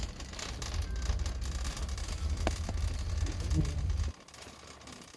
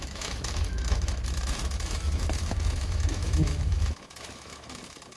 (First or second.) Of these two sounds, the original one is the first